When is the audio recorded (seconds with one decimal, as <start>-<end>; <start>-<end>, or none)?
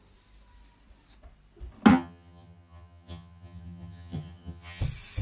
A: 0.0-1.9; 4.8-5.2